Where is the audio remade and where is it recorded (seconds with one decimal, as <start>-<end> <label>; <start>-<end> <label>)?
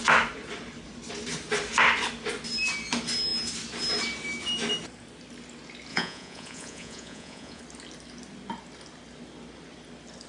0.0-5.9 recorded; 5.9-7.6 remade; 7.6-10.3 recorded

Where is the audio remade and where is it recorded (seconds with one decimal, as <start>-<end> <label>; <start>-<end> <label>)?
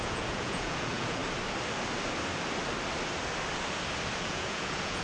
0.0-1.2 remade; 1.2-4.2 recorded; 4.2-5.0 remade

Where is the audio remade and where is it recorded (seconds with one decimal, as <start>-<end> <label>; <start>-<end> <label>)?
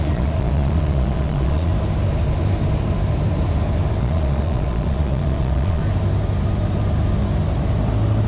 0.0-1.7 remade; 1.7-4.0 recorded; 4.0-5.8 remade; 5.8-8.3 recorded